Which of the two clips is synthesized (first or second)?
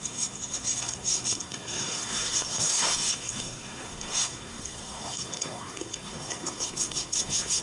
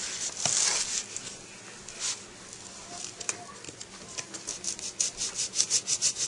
first